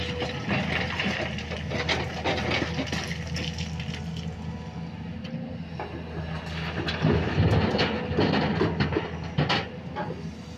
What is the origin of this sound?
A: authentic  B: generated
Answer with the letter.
A